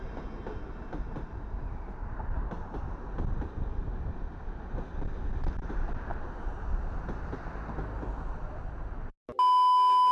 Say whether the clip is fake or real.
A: real